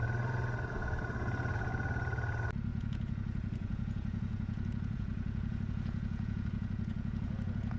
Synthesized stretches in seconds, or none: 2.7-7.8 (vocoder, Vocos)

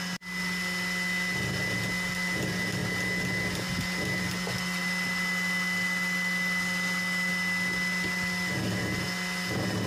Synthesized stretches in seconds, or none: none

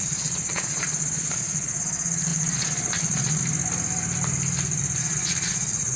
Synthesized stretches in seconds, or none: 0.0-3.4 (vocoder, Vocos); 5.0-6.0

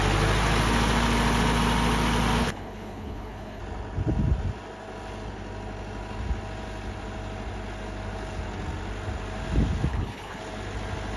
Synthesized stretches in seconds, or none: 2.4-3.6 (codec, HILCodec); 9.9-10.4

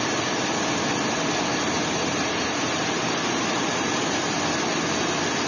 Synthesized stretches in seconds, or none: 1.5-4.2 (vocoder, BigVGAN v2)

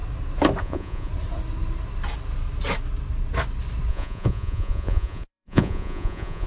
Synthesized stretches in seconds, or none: 0.6-1.1 (vocoder, Vocos); 3.9-6.5

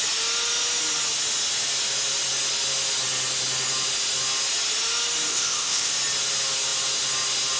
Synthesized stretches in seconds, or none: 5.3-5.9 (codec, ZipCodec)